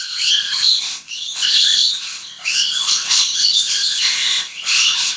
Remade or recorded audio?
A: remade